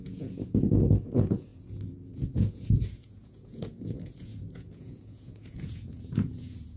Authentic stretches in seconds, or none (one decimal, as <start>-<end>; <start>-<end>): none